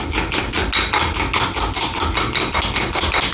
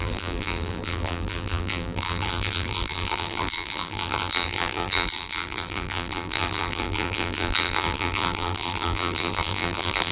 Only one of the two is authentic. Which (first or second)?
first